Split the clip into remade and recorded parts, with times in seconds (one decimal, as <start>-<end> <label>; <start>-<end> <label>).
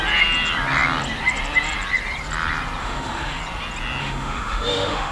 0.0-2.8 recorded; 2.8-3.4 remade; 3.4-4.0 recorded; 4.0-5.1 remade